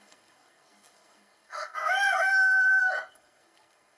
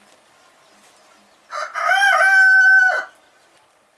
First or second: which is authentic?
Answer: second